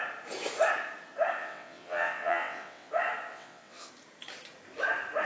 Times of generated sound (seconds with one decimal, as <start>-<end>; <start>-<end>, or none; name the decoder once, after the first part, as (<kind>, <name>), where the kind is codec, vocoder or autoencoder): 1.4-2.9 (vocoder, WaveNeXt); 3.3-3.9

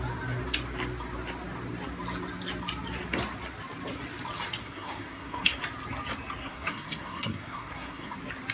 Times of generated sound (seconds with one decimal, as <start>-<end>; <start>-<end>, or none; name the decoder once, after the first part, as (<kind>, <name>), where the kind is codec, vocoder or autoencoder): 4.6-5.6 (codec, SNAC); 6.4-8.1

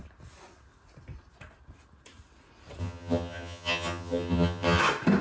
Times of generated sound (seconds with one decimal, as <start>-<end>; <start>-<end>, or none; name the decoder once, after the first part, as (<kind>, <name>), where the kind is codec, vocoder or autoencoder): 2.8-4.8 (vocoder, HiFi-GAN)

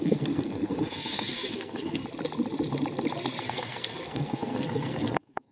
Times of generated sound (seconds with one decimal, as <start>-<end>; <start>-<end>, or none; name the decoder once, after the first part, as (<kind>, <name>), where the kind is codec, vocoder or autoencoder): 0.0-2.0 (codec, SNAC); 3.4-5.5

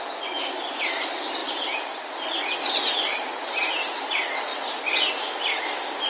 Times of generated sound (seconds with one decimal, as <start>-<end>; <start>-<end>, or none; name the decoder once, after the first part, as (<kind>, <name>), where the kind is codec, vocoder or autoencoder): none

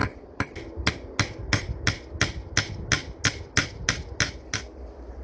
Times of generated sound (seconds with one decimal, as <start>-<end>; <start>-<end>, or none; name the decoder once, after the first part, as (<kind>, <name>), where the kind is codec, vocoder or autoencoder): none